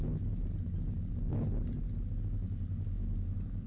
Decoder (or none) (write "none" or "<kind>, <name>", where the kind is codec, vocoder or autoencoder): none